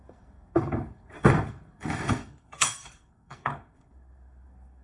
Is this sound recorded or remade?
remade